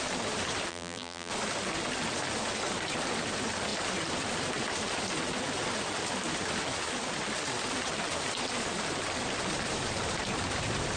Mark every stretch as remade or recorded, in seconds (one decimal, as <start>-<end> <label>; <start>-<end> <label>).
0.0-0.7 recorded; 0.7-1.3 remade; 1.3-11.0 recorded